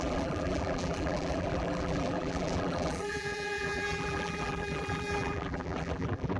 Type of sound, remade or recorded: remade